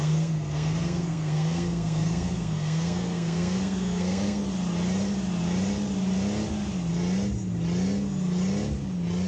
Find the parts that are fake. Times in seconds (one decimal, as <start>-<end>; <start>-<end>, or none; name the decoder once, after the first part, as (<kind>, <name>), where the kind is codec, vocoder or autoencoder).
0.0-4.4 (codec, SNAC)